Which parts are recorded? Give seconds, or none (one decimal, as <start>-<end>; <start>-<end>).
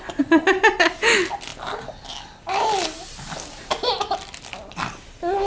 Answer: 0.0-5.5